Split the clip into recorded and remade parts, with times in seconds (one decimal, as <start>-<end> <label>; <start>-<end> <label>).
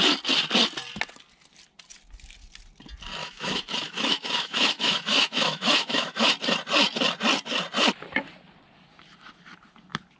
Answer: 0.0-3.2 recorded; 3.2-6.3 remade; 6.3-10.2 recorded